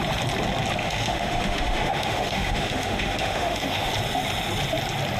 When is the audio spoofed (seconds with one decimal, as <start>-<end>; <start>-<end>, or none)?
0.8-3.9